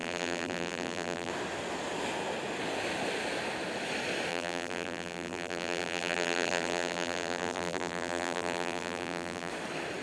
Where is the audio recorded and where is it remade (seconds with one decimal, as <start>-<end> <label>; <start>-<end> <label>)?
0.0-1.3 remade; 1.3-4.3 recorded; 4.3-9.5 remade; 9.5-10.0 recorded

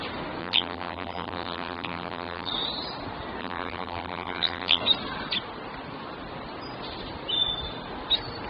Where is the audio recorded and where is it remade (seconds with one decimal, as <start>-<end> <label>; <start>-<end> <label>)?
0.0-0.4 recorded; 0.4-2.5 remade; 2.5-3.4 recorded; 3.4-4.8 remade; 4.8-8.5 recorded